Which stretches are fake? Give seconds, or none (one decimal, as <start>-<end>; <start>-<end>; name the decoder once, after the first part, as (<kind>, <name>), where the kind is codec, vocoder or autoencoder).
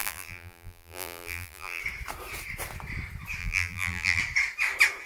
0.0-1.8 (vocoder, BigVGAN v2); 3.4-4.2